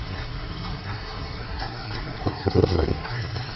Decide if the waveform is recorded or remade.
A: remade